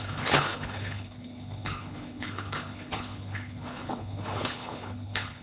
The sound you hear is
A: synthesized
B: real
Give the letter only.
A